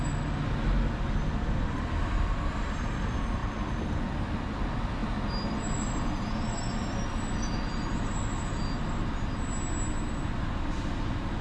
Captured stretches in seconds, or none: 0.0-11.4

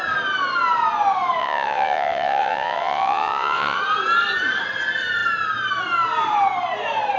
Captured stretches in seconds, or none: 0.0-1.4; 3.8-7.2